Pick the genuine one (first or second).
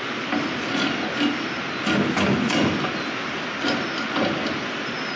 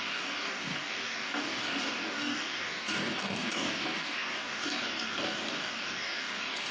first